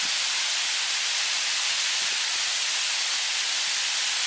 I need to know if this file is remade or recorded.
recorded